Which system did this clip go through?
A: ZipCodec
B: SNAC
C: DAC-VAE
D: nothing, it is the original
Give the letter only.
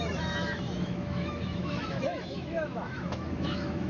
C